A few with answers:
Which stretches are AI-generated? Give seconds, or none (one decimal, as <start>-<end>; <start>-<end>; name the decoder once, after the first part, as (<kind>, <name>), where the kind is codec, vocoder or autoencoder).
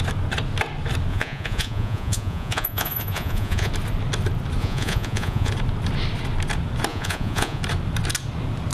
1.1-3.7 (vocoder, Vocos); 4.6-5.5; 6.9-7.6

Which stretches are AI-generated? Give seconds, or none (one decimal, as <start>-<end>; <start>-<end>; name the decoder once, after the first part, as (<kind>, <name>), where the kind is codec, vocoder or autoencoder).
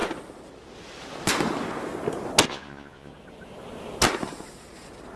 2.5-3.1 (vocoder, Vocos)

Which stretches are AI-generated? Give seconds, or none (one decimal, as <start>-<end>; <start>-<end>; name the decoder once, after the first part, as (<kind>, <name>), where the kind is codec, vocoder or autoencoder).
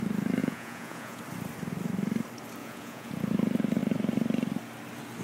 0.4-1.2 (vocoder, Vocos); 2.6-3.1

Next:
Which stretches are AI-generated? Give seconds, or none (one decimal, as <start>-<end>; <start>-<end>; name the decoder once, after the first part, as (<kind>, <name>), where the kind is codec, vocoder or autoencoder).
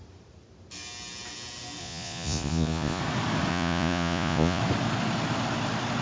1.8-3.0 (vocoder, Vocos); 3.5-4.6